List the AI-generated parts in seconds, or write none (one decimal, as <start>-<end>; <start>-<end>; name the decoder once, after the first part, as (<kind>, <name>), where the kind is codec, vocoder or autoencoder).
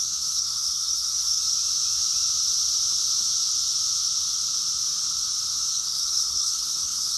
0.0-1.4 (codec, SNAC); 5.7-7.2